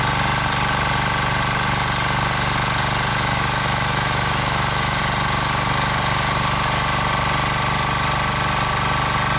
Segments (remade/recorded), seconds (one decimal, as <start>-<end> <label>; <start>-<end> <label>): 0.0-3.1 recorded; 3.1-5.0 remade; 5.0-9.4 recorded

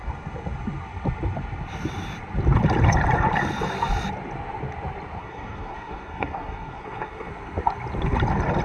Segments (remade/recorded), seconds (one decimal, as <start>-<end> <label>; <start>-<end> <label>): 0.0-5.2 recorded; 5.2-7.3 remade; 7.3-8.6 recorded

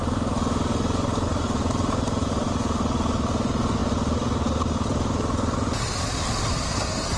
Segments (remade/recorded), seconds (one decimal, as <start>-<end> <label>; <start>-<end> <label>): 0.0-1.6 recorded; 1.6-2.5 remade; 2.5-7.2 recorded

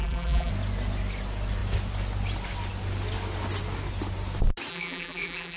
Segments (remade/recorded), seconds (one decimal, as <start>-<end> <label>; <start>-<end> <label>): 0.0-0.5 remade; 0.5-4.7 recorded; 4.7-5.6 remade

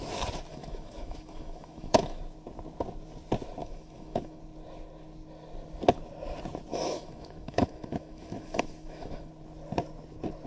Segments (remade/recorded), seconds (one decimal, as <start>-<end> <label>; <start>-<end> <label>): 0.0-0.5 recorded; 0.5-2.2 remade; 2.2-3.6 recorded; 3.6-4.4 remade; 4.4-6.7 recorded; 6.7-9.3 remade; 9.3-10.5 recorded

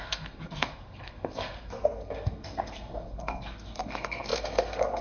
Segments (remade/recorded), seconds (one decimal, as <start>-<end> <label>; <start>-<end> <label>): 0.0-5.0 remade

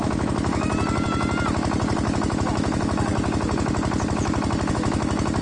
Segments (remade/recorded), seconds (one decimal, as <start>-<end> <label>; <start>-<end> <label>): 0.0-0.7 remade; 0.7-2.2 recorded; 2.2-3.1 remade; 3.1-4.7 recorded; 4.7-5.4 remade

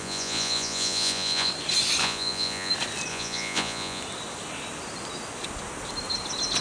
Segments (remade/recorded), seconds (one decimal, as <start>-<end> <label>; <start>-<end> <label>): 0.0-1.5 remade; 1.5-2.0 recorded; 2.0-2.7 remade; 2.7-3.1 recorded; 3.1-4.0 remade; 4.0-6.6 recorded